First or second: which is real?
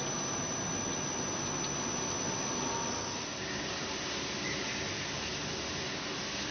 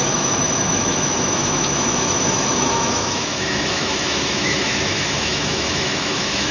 first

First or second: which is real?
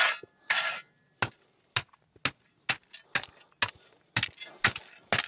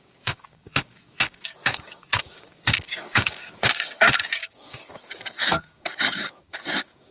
first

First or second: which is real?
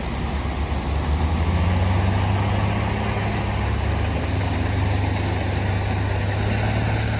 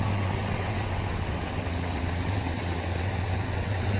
first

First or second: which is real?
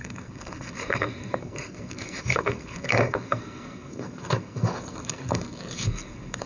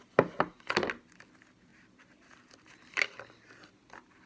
second